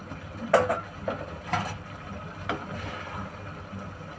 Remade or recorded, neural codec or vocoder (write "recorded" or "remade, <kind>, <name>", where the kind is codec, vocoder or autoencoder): recorded